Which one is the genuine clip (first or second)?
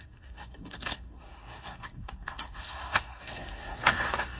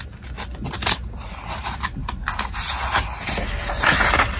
second